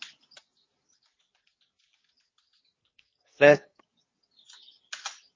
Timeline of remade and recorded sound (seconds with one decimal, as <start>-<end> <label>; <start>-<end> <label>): 0.0-2.8 recorded; 2.8-3.8 remade; 3.8-5.4 recorded